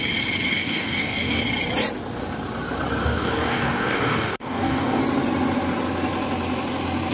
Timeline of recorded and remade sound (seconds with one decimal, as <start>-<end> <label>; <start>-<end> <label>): 0.0-0.5 recorded; 0.5-1.4 remade; 1.4-3.0 recorded; 3.0-5.0 remade; 5.0-7.1 recorded